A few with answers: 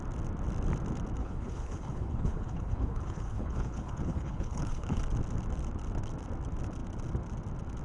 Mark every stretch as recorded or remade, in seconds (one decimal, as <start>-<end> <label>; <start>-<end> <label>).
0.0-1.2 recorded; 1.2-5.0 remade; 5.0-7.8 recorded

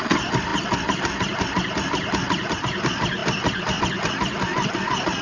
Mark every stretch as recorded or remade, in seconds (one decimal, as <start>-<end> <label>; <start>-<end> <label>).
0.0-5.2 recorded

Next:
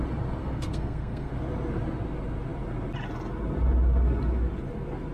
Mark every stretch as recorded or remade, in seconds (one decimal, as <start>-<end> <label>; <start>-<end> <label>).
0.0-0.4 recorded; 0.4-1.3 remade; 1.3-5.1 recorded

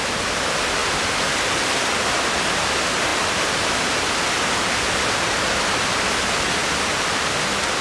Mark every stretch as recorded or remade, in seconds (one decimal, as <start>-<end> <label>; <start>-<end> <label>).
0.0-7.8 recorded